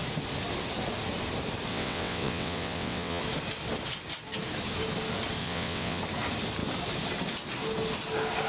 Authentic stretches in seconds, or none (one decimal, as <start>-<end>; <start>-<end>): 0.0-1.7; 3.2-5.4; 6.0-8.5